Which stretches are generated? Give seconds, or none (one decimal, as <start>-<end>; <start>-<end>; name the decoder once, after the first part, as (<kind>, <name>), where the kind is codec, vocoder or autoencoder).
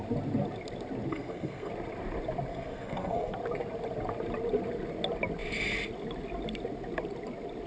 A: 1.1-1.7 (codec, SNAC); 2.5-3.3